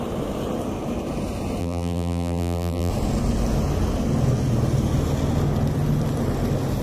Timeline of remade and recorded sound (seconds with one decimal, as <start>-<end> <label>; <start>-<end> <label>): 0.0-1.6 recorded; 1.6-2.9 remade; 2.9-6.8 recorded